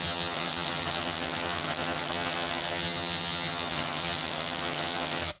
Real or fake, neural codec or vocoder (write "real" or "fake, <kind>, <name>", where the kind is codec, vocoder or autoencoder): fake, vocoder, HiFi-GAN